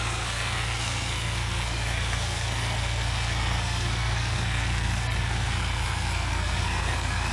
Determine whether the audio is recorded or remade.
remade